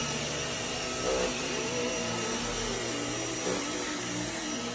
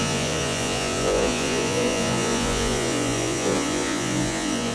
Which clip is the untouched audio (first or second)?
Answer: first